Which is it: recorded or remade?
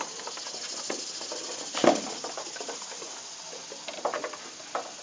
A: recorded